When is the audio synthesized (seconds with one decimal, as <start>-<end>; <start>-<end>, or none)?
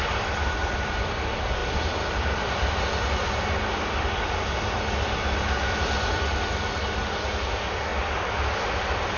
1.6-2.7; 7.9-9.2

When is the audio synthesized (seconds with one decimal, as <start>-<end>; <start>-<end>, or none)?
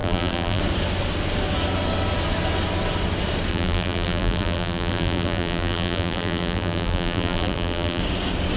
0.0-0.6; 3.5-8.0